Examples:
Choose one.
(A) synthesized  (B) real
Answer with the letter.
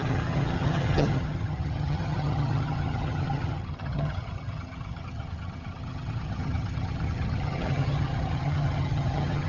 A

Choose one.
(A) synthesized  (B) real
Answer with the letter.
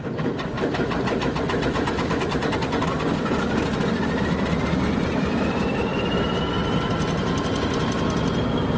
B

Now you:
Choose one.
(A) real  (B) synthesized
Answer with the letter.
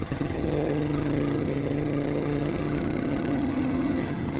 B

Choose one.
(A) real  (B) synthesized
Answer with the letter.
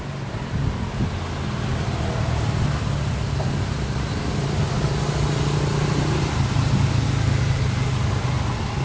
A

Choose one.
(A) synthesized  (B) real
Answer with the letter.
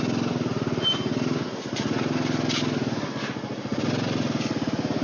B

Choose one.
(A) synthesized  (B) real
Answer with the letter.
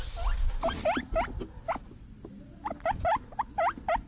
B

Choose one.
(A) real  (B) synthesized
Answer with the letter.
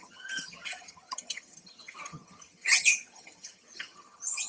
B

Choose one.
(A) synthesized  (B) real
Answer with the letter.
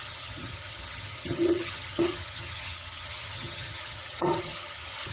A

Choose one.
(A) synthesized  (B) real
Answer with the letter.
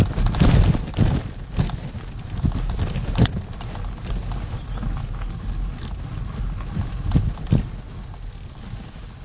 B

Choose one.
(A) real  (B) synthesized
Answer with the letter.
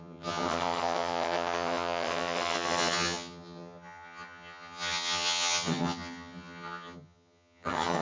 B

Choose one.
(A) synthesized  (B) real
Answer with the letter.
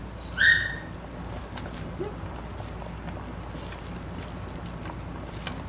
B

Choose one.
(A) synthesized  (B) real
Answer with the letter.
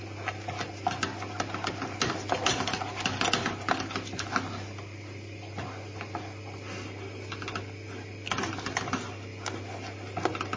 B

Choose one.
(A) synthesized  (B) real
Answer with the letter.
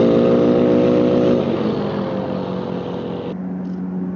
B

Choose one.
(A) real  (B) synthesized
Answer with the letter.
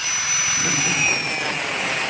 A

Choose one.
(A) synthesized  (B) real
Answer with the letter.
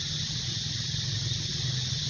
B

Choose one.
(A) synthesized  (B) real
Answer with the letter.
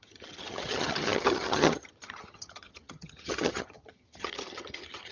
A